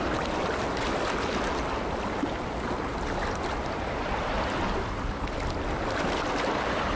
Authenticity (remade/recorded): recorded